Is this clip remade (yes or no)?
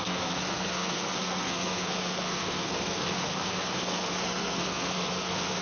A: yes